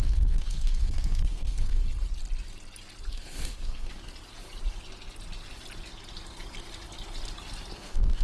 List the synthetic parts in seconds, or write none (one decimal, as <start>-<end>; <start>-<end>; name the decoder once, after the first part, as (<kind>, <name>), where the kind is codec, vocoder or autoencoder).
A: 0.0-1.8 (codec, SNAC); 3.1-4.1; 7.7-8.2